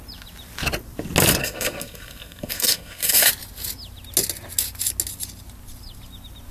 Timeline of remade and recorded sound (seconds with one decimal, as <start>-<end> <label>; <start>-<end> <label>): 0.0-1.4 recorded; 1.4-3.3 remade; 3.3-6.5 recorded